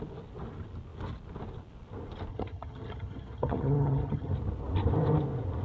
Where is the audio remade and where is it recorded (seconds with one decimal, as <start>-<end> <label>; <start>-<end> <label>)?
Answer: 0.0-2.3 recorded; 2.3-4.3 remade; 4.3-5.6 recorded